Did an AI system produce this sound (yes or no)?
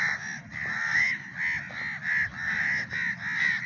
no